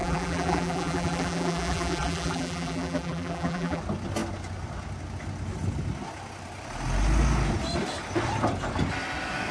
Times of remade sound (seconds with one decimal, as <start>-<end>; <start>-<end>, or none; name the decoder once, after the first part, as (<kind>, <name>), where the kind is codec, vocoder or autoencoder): 0.0-3.8 (vocoder, BigVGAN v2)